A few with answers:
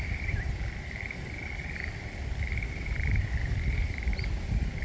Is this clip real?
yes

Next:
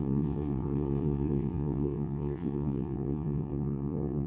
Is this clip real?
no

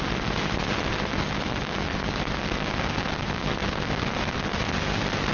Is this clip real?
yes